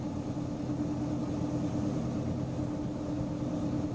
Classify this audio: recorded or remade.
recorded